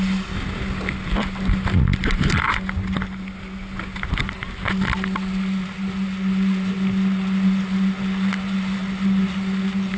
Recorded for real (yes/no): yes